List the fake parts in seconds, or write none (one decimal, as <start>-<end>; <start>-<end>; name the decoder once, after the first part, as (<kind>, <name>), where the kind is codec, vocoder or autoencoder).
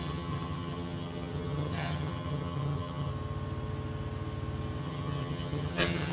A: 0.0-3.1 (vocoder, HiFi-GAN); 4.8-6.1